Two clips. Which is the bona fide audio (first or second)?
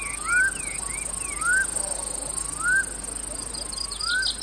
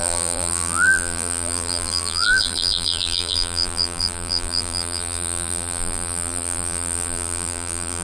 first